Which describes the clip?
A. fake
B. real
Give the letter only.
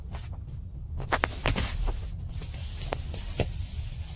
B